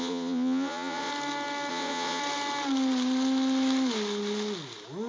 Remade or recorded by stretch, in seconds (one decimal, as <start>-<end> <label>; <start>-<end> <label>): 0.0-1.1 remade; 1.1-1.7 recorded; 1.7-2.2 remade; 2.2-5.1 recorded